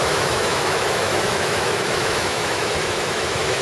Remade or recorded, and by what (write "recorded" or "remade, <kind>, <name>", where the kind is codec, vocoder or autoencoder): remade, autoencoder, DAC-VAE